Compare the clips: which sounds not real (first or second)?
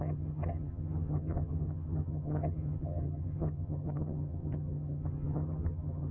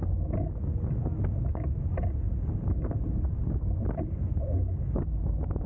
first